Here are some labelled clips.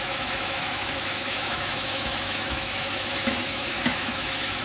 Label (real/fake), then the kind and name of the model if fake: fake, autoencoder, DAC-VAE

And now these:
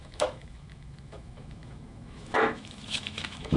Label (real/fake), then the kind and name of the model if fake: fake, autoencoder, DAC-VAE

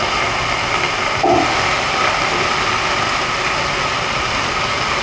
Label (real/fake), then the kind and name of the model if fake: real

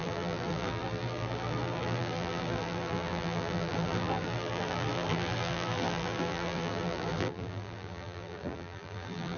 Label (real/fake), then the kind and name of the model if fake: fake, vocoder, BigVGAN v2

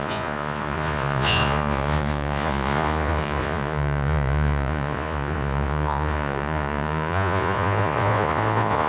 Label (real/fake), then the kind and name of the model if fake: fake, vocoder, Vocos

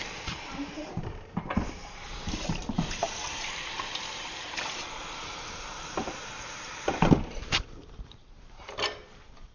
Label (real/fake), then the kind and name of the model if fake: fake, vocoder, BigVGAN v2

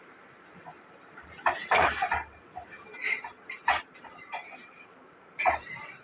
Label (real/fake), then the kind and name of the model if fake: fake, vocoder, BigVGAN v2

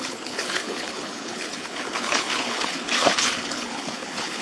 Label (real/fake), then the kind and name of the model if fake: fake, codec, HILCodec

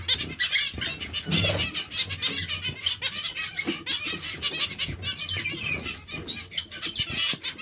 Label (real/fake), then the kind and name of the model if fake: real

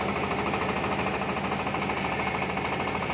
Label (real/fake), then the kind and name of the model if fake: real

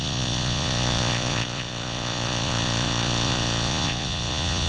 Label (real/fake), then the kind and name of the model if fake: fake, vocoder, Vocos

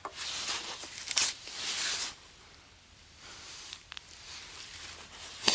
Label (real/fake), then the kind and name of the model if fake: real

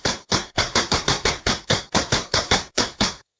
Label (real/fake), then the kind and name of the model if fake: fake, codec, SNAC